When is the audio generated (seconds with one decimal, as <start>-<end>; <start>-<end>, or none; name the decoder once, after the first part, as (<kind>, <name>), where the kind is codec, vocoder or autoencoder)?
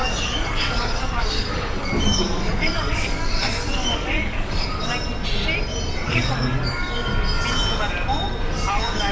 0.0-4.9 (codec, DAC); 6.1-7.1; 8.7-9.1